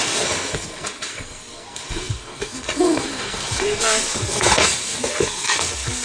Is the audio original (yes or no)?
no